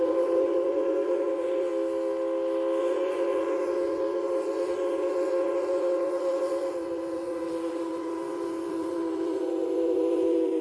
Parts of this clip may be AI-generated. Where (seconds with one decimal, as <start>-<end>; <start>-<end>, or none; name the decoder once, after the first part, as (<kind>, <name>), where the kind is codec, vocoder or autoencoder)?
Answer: 0.0-1.7 (vocoder, Vocos); 2.8-10.6